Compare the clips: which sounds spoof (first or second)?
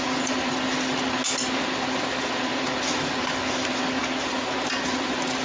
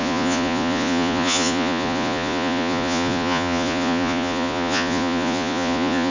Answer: second